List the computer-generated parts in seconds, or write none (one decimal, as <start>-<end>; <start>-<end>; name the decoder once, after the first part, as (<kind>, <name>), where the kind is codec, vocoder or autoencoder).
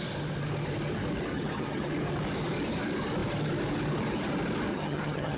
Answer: 1.3-1.9 (vocoder, HiFi-GAN); 4.7-5.4